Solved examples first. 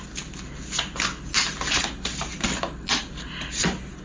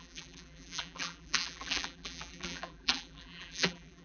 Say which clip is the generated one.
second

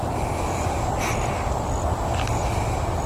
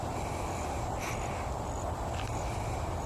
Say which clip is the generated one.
second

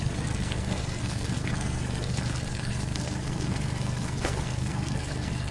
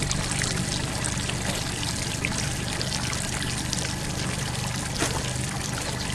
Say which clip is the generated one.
first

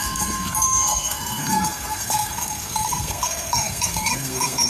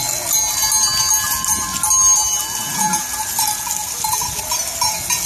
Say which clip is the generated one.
first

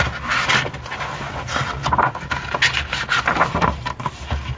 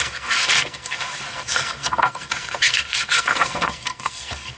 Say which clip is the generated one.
second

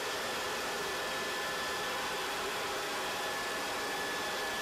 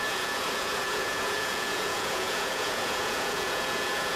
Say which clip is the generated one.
second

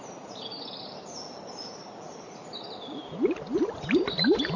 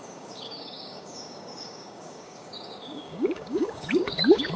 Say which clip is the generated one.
second